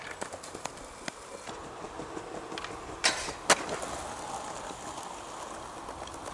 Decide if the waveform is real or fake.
real